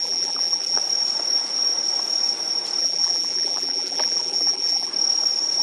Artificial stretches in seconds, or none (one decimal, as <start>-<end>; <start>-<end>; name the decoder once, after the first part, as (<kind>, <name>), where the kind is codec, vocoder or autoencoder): 0.0-0.8 (vocoder, BigVGAN v2); 2.8-4.9